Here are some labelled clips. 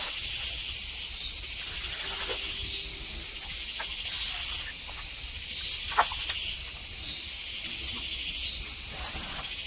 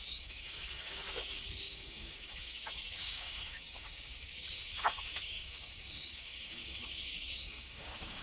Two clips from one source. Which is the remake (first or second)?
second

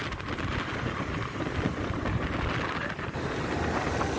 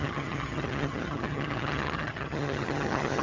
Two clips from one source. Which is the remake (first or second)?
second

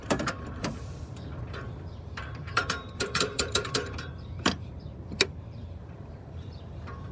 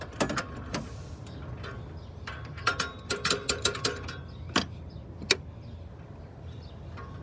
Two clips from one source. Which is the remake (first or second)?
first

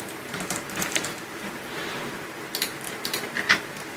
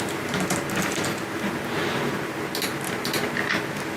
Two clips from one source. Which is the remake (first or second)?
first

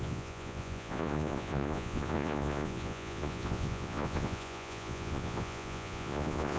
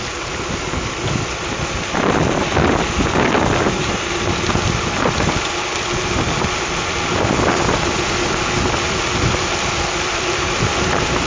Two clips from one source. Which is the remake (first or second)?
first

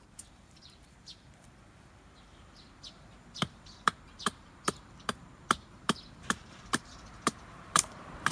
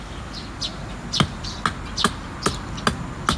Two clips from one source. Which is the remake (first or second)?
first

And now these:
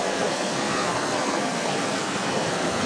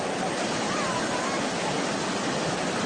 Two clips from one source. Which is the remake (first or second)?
first